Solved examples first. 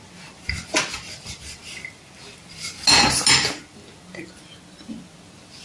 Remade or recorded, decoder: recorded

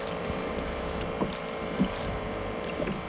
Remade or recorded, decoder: remade, vocoder, BigVGAN v2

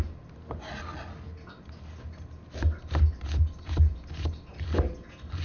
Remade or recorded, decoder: recorded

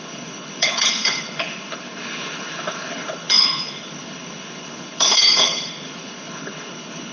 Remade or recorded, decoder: remade, codec, HILCodec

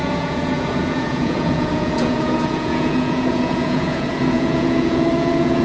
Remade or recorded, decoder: remade, vocoder, Vocos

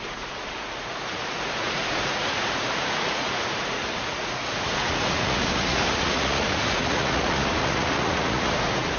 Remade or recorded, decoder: remade, vocoder, Vocos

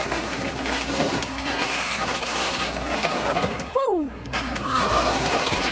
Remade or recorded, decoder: remade, codec, SNAC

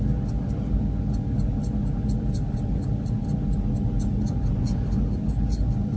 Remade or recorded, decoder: recorded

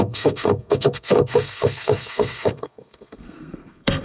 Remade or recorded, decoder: remade, codec, SNAC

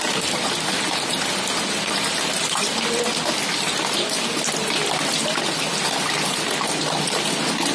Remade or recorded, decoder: recorded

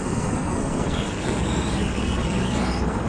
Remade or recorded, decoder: remade, codec, SNAC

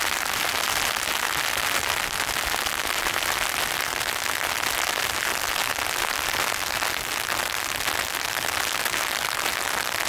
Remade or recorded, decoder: recorded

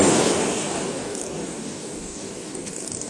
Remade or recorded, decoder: remade, codec, DAC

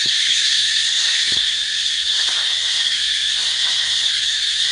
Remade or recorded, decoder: remade, codec, SNAC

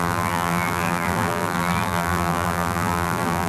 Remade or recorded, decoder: remade, vocoder, BigVGAN v2